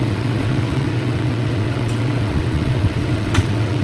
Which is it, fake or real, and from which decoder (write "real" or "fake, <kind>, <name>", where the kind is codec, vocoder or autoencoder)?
fake, vocoder, WaveNeXt